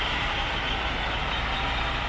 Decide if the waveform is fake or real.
real